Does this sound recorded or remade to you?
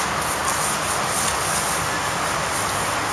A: recorded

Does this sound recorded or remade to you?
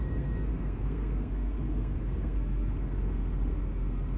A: remade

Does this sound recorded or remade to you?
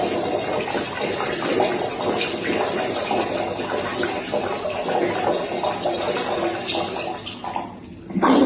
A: recorded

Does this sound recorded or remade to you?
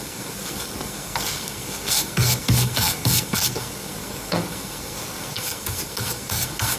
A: remade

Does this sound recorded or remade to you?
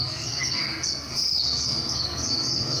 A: remade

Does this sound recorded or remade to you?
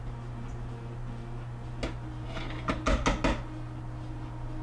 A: recorded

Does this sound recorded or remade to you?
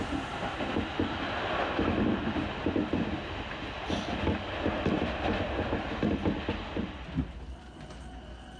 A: recorded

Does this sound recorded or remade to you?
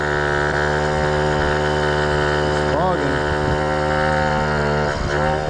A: recorded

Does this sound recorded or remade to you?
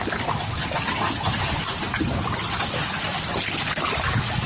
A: recorded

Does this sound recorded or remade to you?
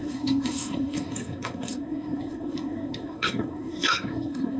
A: remade